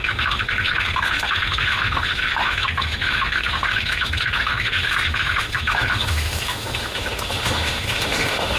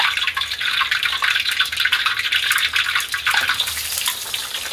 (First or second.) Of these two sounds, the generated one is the first